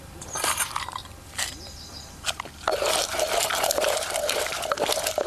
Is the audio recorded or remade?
recorded